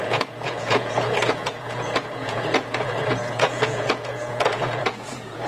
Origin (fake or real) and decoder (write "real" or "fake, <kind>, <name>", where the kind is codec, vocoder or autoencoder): fake, vocoder, Vocos